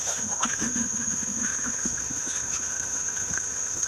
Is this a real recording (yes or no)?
no